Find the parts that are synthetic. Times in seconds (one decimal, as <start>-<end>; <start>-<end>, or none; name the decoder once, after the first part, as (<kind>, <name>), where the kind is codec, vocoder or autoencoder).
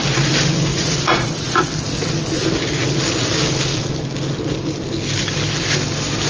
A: 0.7-1.6 (vocoder, Vocos)